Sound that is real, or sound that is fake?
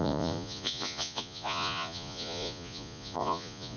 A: fake